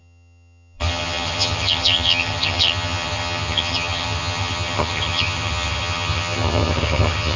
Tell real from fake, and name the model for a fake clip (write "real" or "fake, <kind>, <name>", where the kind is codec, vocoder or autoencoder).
fake, vocoder, HiFi-GAN